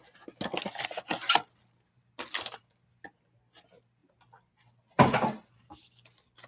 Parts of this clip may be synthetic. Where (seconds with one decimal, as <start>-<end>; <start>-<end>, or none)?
none